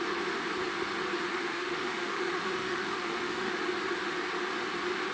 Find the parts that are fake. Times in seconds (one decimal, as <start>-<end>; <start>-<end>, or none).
1.3-3.6